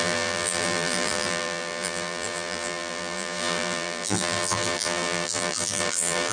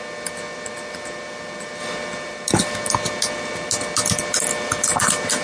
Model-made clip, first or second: first